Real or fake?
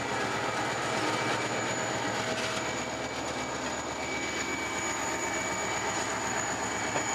real